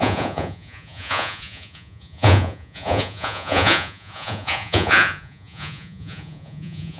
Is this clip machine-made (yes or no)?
yes